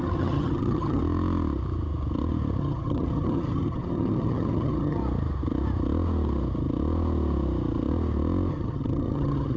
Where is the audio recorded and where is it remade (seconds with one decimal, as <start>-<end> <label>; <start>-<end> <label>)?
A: 0.0-1.0 remade; 1.0-2.6 recorded; 2.6-5.0 remade; 5.0-8.5 recorded; 8.5-9.6 remade